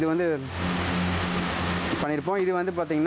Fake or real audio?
real